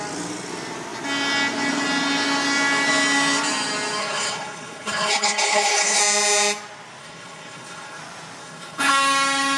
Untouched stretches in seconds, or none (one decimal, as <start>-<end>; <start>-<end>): 0.0-4.0; 6.0-7.0; 8.0-8.4; 8.9-9.6